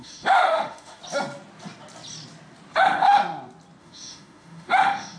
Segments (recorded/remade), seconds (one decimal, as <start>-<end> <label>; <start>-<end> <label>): 0.0-1.0 remade; 1.0-2.8 recorded; 2.8-3.2 remade; 3.2-3.8 recorded; 3.8-5.2 remade

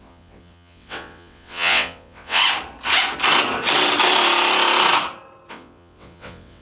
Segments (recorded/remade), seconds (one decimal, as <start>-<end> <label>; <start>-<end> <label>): 0.0-2.4 remade; 2.4-5.5 recorded; 5.5-6.6 remade

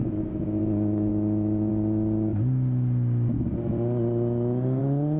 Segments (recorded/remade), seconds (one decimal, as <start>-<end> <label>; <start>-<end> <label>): 0.0-0.6 remade; 0.6-1.1 recorded; 1.1-1.7 remade; 1.7-5.2 recorded